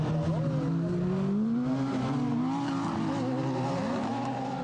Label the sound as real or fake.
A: real